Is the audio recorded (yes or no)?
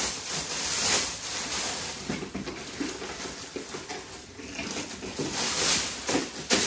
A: yes